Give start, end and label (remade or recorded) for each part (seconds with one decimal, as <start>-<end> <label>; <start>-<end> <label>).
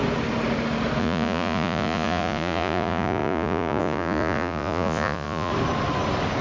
0.0-1.0 recorded; 1.0-5.5 remade; 5.5-6.4 recorded